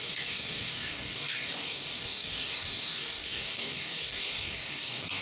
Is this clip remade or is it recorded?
remade